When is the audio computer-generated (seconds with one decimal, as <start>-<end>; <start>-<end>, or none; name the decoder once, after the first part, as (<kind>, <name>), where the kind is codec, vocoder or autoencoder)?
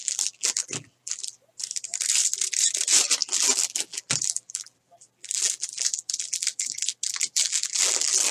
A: 0.0-1.2 (vocoder, BigVGAN v2); 3.2-8.3